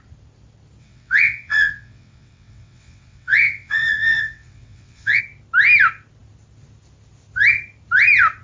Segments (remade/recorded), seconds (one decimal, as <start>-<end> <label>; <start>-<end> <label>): 0.0-0.8 recorded; 0.8-5.2 remade; 5.2-8.4 recorded